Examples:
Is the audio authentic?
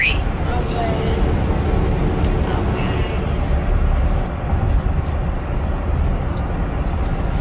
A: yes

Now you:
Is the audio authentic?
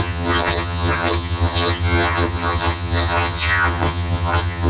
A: no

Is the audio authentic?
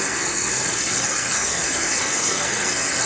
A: no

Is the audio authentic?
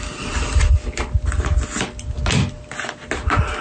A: yes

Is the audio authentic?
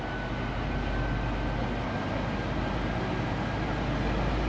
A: yes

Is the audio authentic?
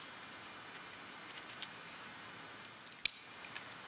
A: yes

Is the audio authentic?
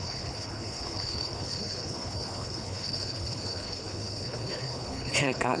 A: no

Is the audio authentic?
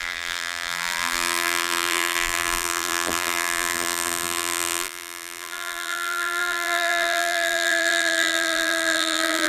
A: no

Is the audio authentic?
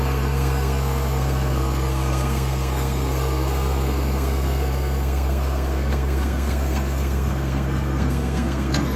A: no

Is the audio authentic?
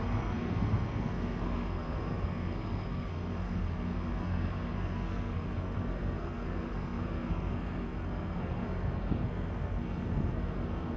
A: no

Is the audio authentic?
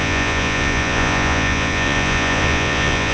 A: no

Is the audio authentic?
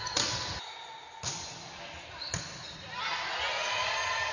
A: yes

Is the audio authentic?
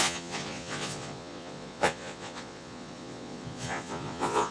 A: no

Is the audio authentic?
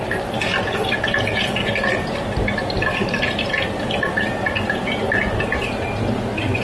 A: no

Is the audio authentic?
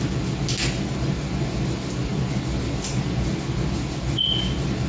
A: yes